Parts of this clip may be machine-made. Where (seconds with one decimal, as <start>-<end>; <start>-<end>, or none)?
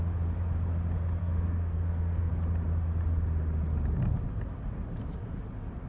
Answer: 1.2-2.3